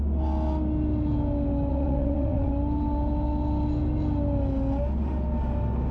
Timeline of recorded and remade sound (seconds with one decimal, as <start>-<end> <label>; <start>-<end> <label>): 0.0-1.7 recorded; 1.7-2.5 remade; 2.5-5.9 recorded